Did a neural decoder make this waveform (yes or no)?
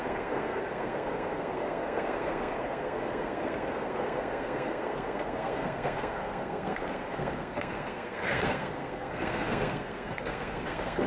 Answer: yes